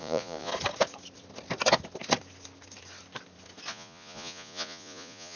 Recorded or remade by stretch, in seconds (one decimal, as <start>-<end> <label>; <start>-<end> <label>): 0.0-0.5 remade; 0.5-3.7 recorded; 3.7-5.4 remade